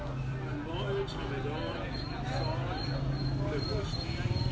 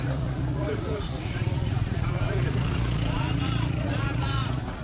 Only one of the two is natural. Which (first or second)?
first